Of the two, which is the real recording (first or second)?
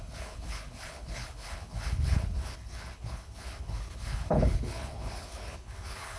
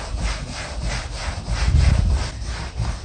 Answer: second